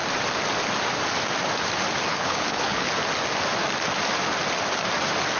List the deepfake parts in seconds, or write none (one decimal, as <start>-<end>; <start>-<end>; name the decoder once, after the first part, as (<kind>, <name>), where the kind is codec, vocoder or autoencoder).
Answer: 2.1-2.9 (codec, HILCodec)